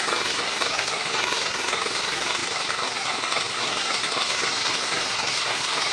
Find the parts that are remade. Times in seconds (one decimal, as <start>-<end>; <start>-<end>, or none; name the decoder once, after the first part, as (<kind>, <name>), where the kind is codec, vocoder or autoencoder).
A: 0.0-5.9 (codec, SNAC)